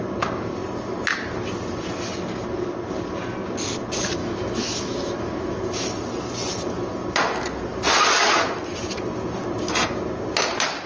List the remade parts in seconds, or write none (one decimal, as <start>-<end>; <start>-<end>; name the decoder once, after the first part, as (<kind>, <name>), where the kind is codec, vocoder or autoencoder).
4.2-5.6 (autoencoder, DAC-VAE)